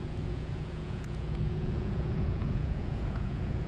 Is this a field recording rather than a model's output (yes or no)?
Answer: no